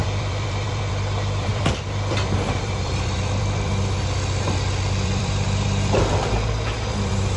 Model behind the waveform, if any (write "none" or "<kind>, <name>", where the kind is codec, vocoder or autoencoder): vocoder, BigVGAN v2